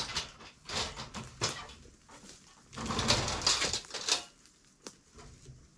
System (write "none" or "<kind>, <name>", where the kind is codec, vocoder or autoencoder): none